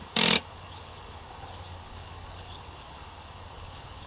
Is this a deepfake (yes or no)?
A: yes